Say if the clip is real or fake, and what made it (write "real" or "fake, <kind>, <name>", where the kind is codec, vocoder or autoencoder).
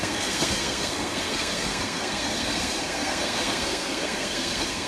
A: fake, codec, SNAC